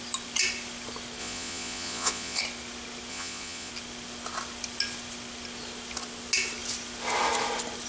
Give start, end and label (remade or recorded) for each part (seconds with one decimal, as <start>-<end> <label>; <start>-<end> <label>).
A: 0.0-1.2 recorded; 1.2-2.4 remade; 2.4-3.1 recorded; 3.1-3.7 remade; 3.7-7.9 recorded